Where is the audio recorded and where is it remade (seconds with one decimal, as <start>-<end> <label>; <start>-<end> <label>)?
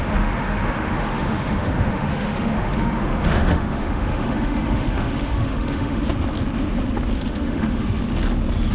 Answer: 0.0-6.0 remade; 6.0-7.2 recorded; 7.2-8.0 remade; 8.0-8.7 recorded